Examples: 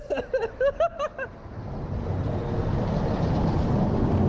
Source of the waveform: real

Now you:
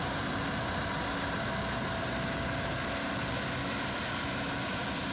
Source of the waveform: real